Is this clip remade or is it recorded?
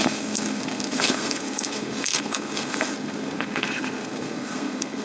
remade